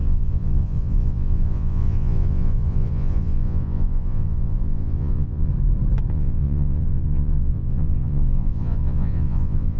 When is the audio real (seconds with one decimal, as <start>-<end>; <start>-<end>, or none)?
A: 5.5-6.1